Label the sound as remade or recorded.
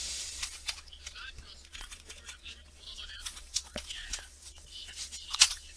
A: remade